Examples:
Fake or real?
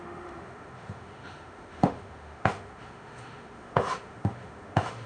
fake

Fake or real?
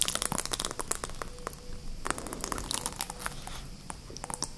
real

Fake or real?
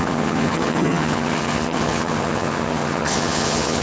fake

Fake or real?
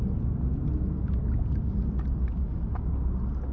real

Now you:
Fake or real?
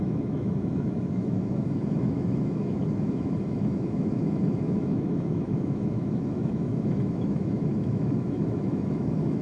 fake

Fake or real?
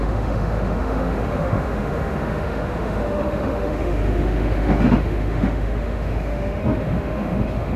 fake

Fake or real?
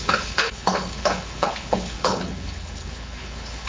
fake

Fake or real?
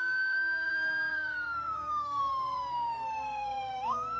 fake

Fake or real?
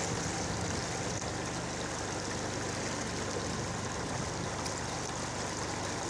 real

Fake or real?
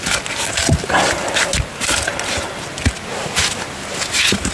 real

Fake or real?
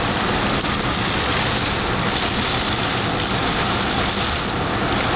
real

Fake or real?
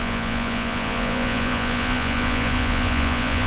fake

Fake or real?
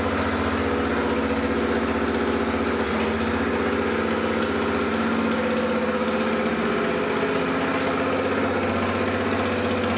real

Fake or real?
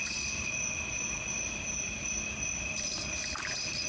fake